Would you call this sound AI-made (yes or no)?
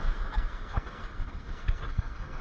yes